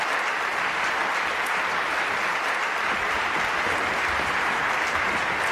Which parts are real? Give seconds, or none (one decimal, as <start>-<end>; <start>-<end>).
0.0-5.5